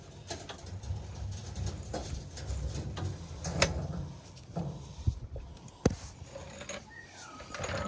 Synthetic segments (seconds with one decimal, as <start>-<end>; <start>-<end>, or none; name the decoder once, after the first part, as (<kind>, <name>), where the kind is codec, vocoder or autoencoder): none